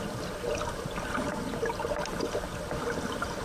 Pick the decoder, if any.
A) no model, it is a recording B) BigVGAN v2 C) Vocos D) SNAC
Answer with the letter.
A